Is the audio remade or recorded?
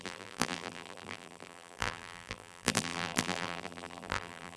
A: remade